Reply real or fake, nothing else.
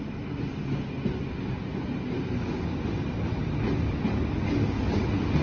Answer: real